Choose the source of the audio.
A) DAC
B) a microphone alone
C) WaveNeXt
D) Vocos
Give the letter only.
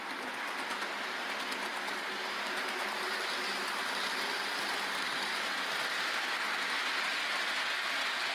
B